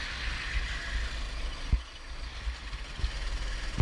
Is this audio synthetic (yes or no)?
no